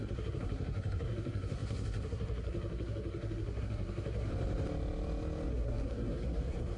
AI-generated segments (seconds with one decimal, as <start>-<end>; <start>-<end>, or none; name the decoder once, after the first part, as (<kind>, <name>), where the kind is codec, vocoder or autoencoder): 0.0-4.3 (codec, SNAC); 5.5-6.8